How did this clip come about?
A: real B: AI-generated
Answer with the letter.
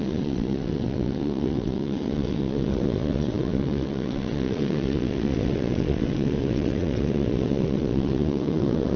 B